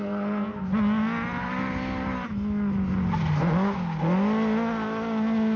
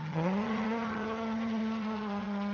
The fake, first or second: second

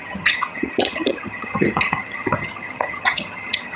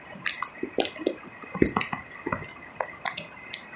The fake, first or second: first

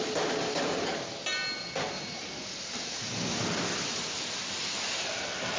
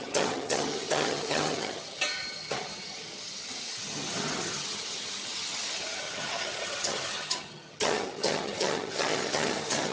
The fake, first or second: second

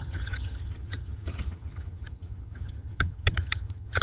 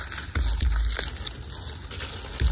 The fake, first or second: first